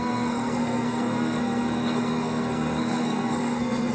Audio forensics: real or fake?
fake